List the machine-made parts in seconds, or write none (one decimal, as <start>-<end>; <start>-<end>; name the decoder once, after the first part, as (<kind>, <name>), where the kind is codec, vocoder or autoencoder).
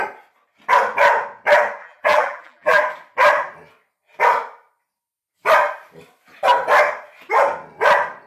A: 1.8-2.8 (vocoder, BigVGAN v2)